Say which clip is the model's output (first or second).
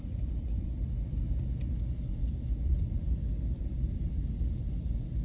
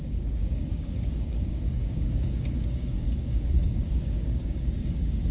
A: second